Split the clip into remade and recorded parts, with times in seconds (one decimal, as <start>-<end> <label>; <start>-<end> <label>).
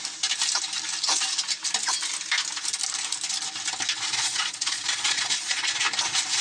0.0-4.1 recorded; 4.1-5.7 remade; 5.7-6.4 recorded